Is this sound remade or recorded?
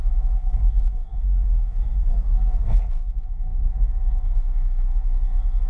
remade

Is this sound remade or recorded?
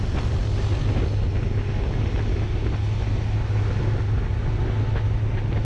recorded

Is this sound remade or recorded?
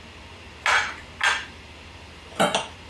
recorded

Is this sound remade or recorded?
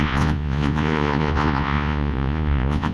remade